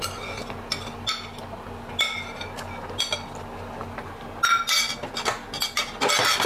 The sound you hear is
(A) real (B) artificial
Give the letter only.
A